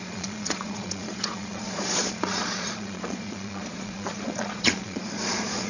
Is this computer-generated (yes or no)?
yes